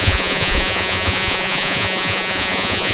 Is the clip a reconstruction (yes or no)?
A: yes